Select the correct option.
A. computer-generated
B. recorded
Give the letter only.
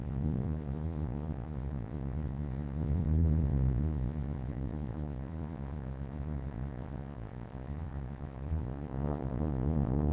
A